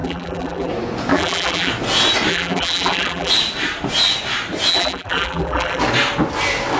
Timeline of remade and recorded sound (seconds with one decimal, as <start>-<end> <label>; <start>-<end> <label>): 0.0-0.7 remade; 0.7-1.1 recorded; 1.1-1.7 remade; 1.7-2.3 recorded; 2.3-3.3 remade; 3.3-4.7 recorded; 4.7-5.8 remade; 5.8-6.8 recorded